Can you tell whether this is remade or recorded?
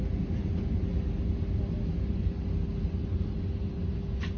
recorded